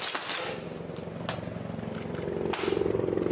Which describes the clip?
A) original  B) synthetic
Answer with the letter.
A